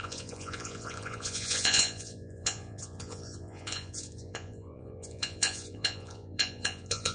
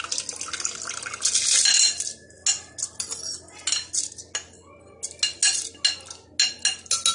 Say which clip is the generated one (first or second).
first